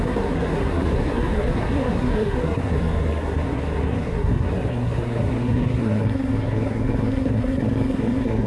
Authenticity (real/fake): fake